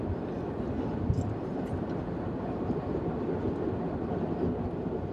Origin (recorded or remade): recorded